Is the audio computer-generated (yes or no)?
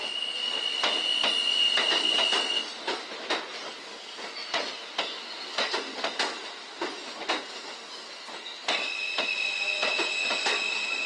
no